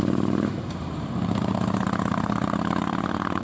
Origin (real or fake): fake